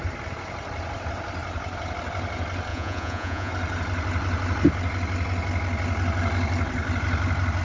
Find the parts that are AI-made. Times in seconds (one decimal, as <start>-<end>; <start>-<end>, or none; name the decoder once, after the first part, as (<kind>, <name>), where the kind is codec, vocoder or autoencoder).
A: 2.7-3.5 (vocoder, Vocos)